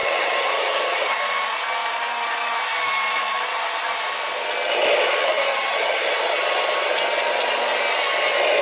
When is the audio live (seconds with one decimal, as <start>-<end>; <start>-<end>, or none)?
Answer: 1.2-5.2; 6.1-8.6